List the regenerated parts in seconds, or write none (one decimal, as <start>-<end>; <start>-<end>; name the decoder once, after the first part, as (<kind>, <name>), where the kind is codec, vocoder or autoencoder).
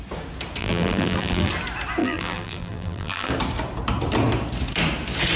0.6-1.5 (vocoder, BigVGAN v2); 2.0-3.3